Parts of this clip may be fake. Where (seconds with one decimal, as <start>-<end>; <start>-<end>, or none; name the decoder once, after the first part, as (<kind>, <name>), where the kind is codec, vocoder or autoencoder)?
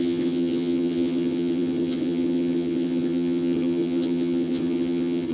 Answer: 0.0-5.3 (vocoder, HiFi-GAN)